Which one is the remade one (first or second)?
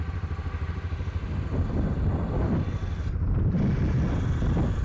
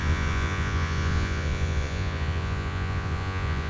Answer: second